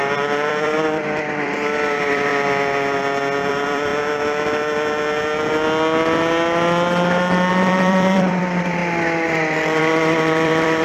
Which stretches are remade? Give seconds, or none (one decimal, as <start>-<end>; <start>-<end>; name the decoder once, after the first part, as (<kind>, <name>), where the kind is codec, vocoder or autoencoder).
0.0-2.3 (vocoder, BigVGAN v2); 3.5-3.9; 7.5-8.8; 9.8-10.8